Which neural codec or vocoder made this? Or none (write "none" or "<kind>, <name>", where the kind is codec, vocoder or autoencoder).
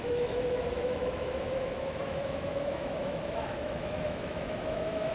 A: autoencoder, DAC-VAE